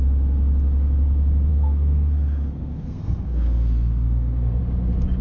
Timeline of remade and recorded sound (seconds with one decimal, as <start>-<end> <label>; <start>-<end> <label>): 0.0-1.5 recorded; 1.5-4.6 remade; 4.6-5.2 recorded